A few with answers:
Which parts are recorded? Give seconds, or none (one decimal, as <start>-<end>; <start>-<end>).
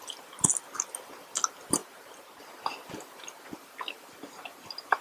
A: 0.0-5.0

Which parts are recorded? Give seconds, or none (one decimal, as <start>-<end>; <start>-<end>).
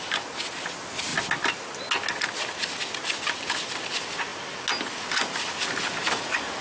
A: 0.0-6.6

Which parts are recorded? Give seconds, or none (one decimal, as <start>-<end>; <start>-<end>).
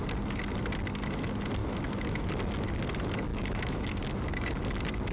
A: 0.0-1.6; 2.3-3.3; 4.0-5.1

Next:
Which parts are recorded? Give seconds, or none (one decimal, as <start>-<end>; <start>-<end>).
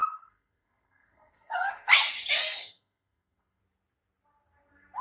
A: 1.9-2.4; 3.6-5.0